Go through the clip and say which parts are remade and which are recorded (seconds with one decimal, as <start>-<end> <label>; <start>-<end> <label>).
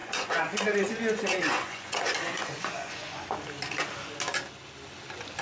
0.0-3.2 remade; 3.2-5.4 recorded